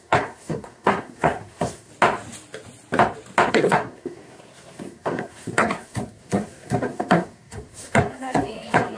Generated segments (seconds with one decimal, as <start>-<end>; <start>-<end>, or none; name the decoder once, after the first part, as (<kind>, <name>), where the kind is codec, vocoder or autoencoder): 0.0-1.9 (codec, SNAC); 3.5-9.0